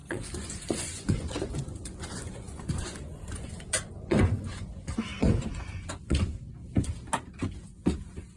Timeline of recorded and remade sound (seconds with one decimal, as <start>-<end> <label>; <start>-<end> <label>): 0.0-6.6 remade; 6.6-7.6 recorded; 7.6-8.4 remade